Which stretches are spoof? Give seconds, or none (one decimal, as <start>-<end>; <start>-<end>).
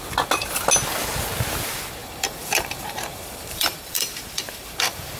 2.0-5.2